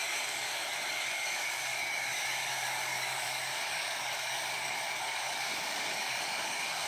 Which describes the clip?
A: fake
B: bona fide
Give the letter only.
A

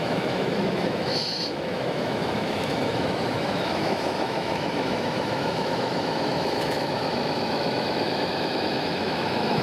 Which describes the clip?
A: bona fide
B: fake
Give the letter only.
B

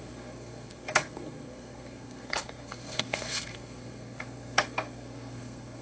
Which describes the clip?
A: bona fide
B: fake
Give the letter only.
B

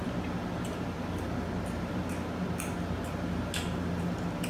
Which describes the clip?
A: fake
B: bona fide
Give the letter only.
B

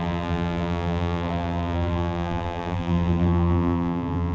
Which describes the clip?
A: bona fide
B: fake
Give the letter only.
B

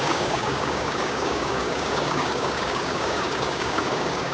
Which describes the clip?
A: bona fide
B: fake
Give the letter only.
B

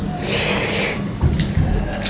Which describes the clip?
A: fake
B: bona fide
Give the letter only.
B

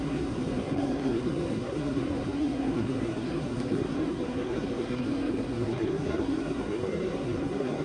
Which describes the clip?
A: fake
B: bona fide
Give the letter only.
A